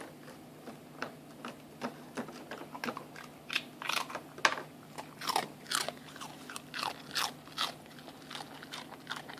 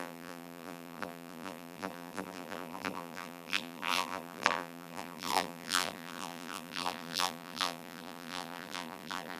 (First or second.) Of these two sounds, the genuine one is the first